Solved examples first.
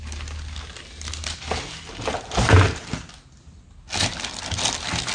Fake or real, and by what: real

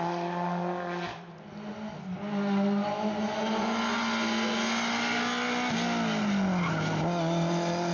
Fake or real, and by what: real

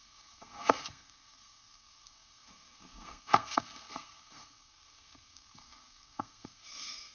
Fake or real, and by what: fake, codec, SNAC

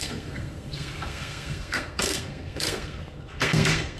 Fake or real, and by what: fake, codec, SNAC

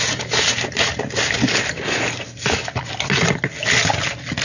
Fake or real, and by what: real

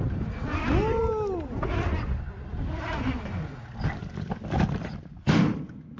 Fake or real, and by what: real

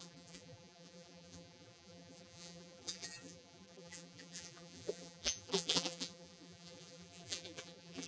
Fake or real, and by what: fake, vocoder, BigVGAN v2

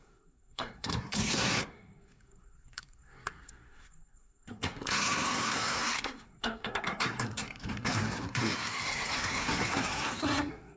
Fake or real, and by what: fake, codec, SNAC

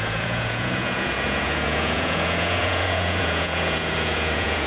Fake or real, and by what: fake, vocoder, Vocos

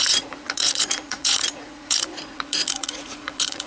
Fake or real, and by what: fake, vocoder, Vocos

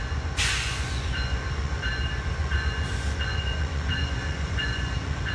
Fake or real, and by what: fake, vocoder, Vocos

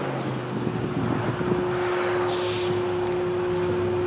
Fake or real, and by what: real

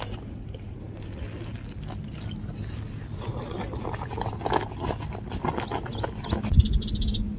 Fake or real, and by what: real